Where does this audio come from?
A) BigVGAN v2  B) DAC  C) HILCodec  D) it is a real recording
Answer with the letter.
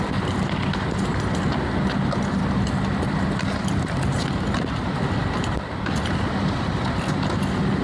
D